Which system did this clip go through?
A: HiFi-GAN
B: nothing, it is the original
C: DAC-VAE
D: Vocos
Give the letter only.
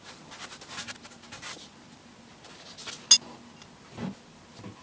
B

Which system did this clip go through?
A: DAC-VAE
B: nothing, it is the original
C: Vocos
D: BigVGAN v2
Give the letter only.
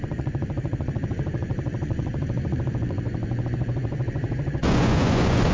C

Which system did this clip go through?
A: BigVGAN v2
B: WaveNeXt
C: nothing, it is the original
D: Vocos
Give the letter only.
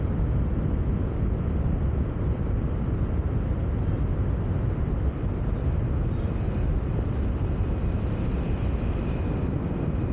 C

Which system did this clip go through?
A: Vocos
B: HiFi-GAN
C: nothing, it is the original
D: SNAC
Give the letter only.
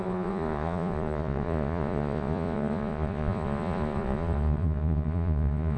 A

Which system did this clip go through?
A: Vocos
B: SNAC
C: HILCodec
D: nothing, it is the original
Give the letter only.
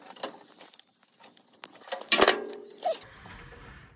D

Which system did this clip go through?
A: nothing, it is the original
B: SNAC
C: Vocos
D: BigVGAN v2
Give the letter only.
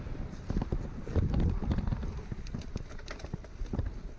A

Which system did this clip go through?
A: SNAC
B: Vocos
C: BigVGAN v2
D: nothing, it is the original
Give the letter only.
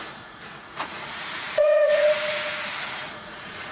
B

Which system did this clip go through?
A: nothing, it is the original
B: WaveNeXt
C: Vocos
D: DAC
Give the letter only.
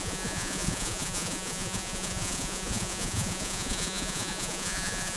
C